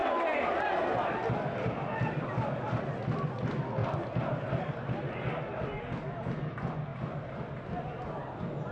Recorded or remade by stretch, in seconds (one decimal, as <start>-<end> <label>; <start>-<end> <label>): 0.0-3.8 recorded; 3.8-5.7 remade; 5.7-6.9 recorded; 6.9-7.6 remade; 7.6-8.7 recorded